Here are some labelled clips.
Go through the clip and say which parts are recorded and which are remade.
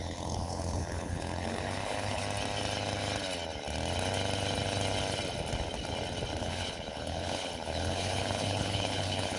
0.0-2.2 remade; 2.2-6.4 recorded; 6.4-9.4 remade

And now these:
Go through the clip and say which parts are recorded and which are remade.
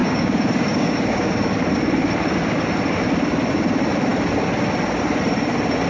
0.0-1.3 remade; 1.3-5.9 recorded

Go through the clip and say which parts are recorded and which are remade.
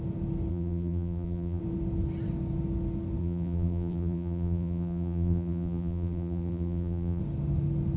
0.0-0.5 recorded; 0.5-1.6 remade; 1.6-3.2 recorded; 3.2-7.2 remade; 7.2-8.0 recorded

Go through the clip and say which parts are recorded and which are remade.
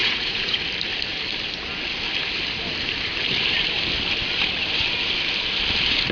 0.0-0.6 remade; 0.6-6.1 recorded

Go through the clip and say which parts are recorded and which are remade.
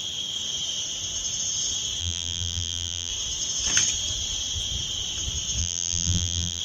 0.0-2.0 recorded; 2.0-3.1 remade; 3.1-5.6 recorded; 5.6-6.6 remade